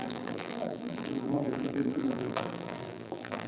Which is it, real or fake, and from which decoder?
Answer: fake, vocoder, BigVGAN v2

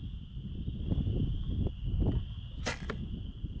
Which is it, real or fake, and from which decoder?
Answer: real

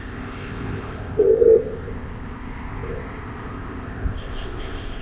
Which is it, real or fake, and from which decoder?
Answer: fake, codec, ZipCodec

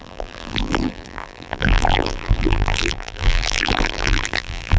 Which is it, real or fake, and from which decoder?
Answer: fake, vocoder, BigVGAN v2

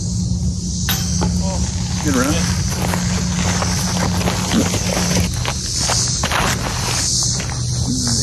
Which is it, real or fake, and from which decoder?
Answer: real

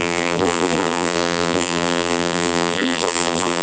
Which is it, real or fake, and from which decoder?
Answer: fake, vocoder, BigVGAN v2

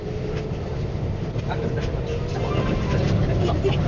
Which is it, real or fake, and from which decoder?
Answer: real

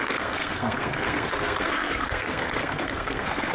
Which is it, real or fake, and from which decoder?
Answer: fake, codec, SNAC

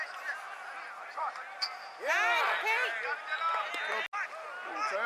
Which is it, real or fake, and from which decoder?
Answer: real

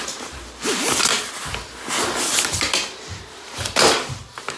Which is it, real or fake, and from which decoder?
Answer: real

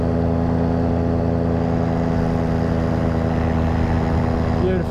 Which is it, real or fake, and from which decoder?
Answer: real